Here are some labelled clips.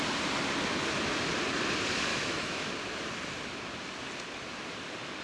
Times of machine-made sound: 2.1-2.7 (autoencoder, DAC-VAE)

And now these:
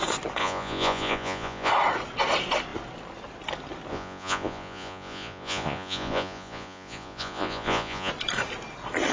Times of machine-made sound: 0.4-1.7 (vocoder, Vocos); 3.9-8.1

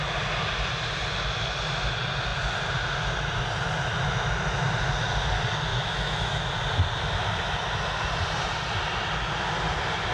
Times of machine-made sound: 5.7-6.4 (autoencoder, DAC-VAE)